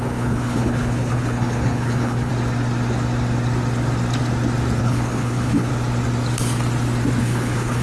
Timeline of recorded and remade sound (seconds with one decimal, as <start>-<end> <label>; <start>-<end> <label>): 0.0-2.3 remade; 2.3-4.8 recorded; 4.8-5.7 remade; 5.7-7.2 recorded; 7.2-7.8 remade